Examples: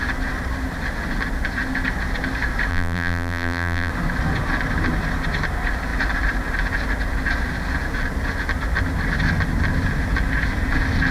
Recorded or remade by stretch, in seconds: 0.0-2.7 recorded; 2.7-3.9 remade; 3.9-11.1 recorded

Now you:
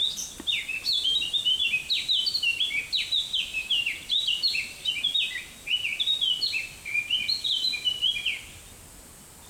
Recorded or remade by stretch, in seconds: 0.0-1.6 recorded; 1.6-2.8 remade; 2.8-3.5 recorded; 3.5-4.9 remade; 4.9-9.5 recorded

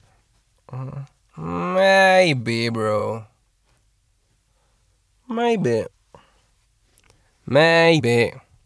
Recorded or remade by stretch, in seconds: 0.0-3.0 recorded; 3.0-4.3 remade; 4.3-6.9 recorded; 6.9-8.0 remade; 8.0-8.7 recorded

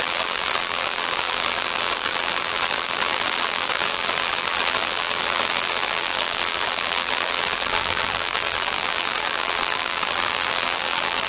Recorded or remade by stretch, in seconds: 0.0-11.3 remade

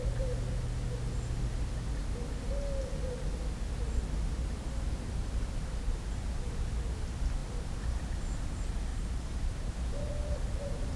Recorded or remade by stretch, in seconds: 0.0-7.4 recorded; 7.4-8.1 remade; 8.1-8.9 recorded; 8.9-9.7 remade; 9.7-11.0 recorded

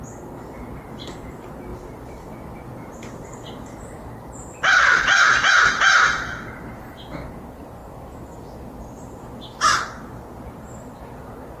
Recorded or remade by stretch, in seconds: 0.0-1.7 recorded; 1.7-5.5 remade; 5.5-11.6 recorded

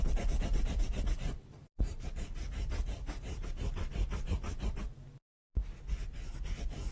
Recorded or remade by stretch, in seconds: 0.0-0.5 recorded; 0.5-3.3 remade; 3.3-6.9 recorded